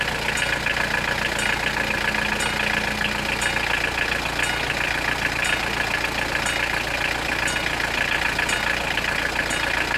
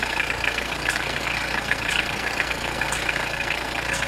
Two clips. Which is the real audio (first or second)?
first